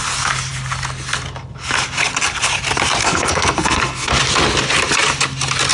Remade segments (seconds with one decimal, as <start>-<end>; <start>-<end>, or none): 3.0-4.1